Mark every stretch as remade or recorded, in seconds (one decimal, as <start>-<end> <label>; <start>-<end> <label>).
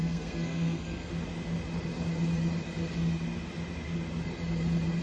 0.0-1.1 remade; 1.1-5.0 recorded